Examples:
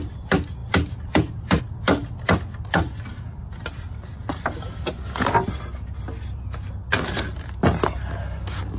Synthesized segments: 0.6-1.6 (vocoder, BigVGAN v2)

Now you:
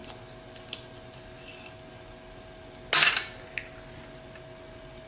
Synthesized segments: none

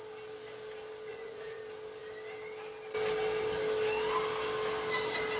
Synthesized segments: 1.1-1.6 (vocoder, Vocos)